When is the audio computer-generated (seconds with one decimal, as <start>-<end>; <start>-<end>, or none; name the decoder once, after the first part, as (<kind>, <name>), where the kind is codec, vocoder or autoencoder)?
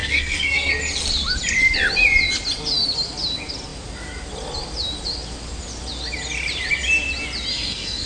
0.0-0.7 (codec, SNAC); 7.5-8.1